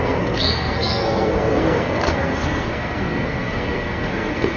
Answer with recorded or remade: remade